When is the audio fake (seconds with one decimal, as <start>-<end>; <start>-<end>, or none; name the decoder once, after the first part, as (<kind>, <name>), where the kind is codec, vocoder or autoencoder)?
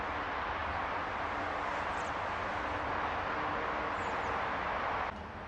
none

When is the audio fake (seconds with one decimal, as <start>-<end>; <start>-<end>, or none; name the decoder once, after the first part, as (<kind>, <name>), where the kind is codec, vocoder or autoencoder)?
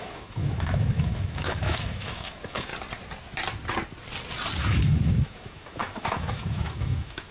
0.0-2.7 (autoencoder, DAC-VAE); 4.6-7.3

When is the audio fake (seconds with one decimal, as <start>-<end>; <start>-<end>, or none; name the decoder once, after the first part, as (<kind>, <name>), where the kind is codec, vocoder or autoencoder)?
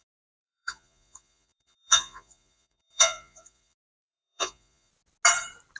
0.0-4.9 (vocoder, Vocos)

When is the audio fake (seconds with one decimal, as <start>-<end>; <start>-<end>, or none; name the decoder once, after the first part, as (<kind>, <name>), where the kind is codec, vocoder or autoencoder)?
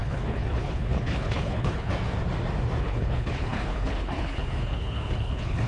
0.0-1.9 (codec, HILCodec); 2.8-5.7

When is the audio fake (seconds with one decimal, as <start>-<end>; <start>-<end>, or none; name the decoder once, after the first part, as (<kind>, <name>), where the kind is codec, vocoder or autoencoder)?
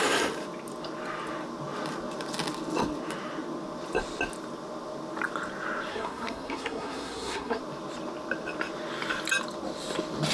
5.9-7.6 (codec, SNAC)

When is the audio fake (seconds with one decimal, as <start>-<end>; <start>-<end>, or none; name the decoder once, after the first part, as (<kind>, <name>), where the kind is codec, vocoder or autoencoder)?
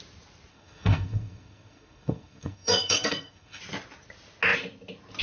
0.5-3.6 (codec, SNAC)